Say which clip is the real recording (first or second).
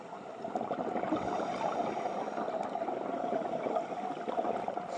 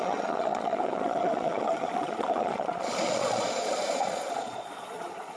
first